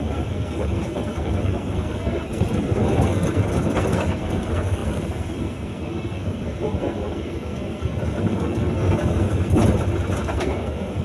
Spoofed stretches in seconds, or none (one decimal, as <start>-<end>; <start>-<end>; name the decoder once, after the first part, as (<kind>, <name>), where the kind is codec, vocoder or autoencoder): 0.0-9.6 (codec, SNAC); 10.2-11.0